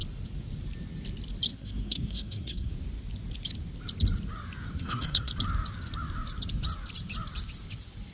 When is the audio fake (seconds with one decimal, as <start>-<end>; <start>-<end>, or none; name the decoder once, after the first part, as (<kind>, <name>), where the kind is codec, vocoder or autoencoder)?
1.5-2.7 (codec, SNAC); 4.8-5.3